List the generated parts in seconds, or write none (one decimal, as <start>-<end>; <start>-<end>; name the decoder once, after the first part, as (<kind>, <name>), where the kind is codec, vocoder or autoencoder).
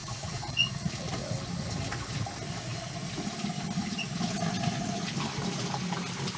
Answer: 0.0-1.1 (vocoder, Vocos)